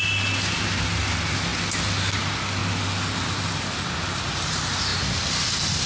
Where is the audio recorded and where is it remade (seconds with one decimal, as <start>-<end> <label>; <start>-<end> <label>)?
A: 0.0-5.9 recorded